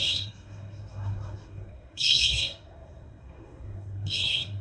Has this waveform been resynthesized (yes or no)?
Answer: yes